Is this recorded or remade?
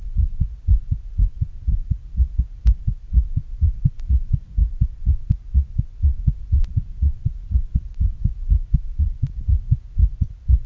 remade